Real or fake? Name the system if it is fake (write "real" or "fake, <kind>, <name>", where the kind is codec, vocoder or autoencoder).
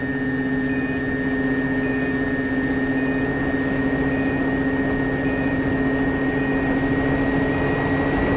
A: real